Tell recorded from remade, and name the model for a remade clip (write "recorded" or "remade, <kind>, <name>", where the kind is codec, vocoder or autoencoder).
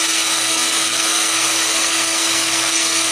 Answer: remade, codec, SNAC